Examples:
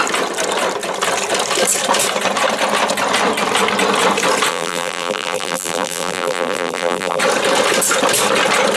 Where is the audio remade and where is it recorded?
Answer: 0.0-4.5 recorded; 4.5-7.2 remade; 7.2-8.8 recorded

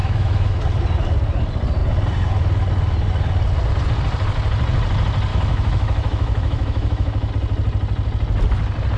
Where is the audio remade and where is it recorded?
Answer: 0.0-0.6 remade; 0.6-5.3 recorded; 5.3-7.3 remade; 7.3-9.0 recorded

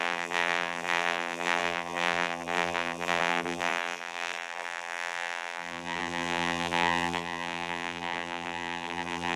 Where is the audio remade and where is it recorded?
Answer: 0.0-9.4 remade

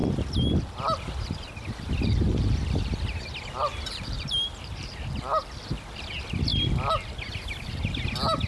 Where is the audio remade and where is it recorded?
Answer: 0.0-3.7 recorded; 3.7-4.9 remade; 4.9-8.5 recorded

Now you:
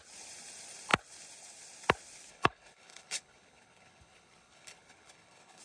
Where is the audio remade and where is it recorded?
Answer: 0.0-2.3 recorded; 2.3-5.6 remade

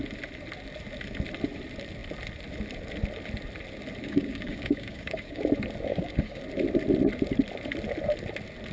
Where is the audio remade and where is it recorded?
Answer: 0.0-4.0 recorded; 4.0-5.4 remade; 5.4-5.9 recorded; 5.9-6.4 remade; 6.4-8.7 recorded